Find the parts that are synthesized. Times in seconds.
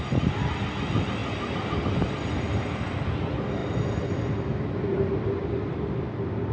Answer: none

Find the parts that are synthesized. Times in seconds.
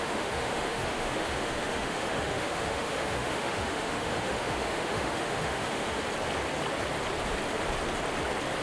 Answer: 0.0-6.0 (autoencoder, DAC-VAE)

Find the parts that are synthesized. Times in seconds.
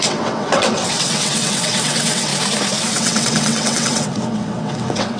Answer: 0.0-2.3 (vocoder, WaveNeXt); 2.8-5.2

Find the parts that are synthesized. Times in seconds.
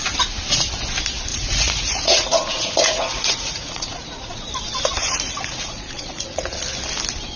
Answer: 1.3-4.5 (vocoder, Vocos); 5.0-6.5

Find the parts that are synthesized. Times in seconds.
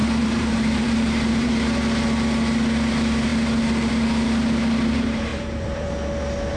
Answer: 0.0-1.5 (vocoder, BigVGAN v2); 5.3-5.9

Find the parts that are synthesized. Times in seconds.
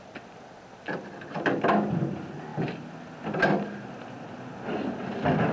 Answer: none